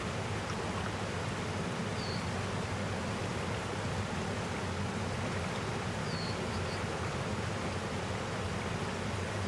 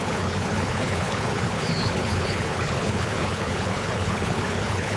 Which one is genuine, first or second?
first